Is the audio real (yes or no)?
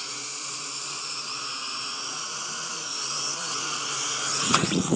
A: no